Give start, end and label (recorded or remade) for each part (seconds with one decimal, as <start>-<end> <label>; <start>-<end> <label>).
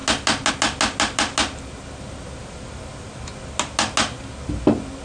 0.0-5.0 recorded